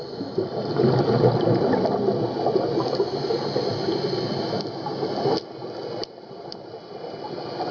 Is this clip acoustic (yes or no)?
yes